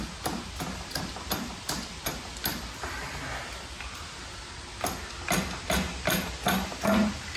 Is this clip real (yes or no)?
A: yes